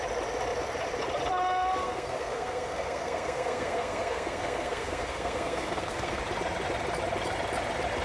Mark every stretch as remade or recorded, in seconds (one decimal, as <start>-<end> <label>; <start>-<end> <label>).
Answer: 0.0-1.8 recorded; 1.8-6.2 remade; 6.2-8.0 recorded